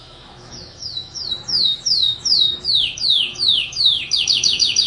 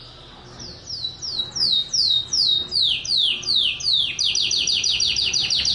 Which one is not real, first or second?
first